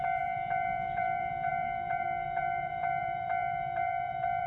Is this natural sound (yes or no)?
no